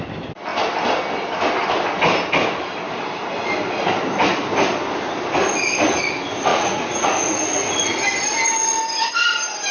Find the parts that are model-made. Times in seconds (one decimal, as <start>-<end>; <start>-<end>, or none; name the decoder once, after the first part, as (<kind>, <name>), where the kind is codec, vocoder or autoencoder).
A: 6.5-7.9 (vocoder, Vocos)